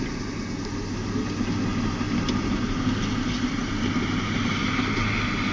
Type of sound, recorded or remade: recorded